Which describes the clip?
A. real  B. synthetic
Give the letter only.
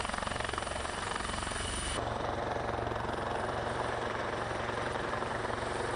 B